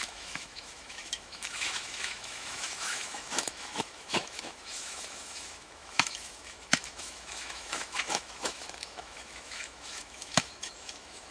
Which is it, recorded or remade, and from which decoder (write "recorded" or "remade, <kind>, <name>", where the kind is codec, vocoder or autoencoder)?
remade, autoencoder, DAC-VAE